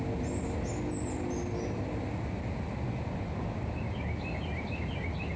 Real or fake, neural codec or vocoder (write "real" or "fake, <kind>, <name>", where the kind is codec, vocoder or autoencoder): real